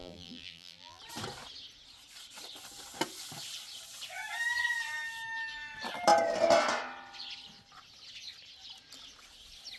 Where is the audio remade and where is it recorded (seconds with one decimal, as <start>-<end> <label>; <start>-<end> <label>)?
0.0-1.0 remade; 1.0-9.8 recorded